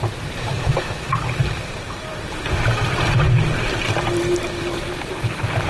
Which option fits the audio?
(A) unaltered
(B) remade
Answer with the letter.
B